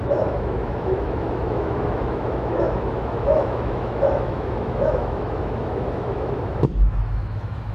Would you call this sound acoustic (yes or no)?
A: no